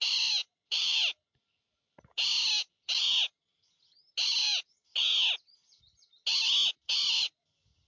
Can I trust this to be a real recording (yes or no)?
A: yes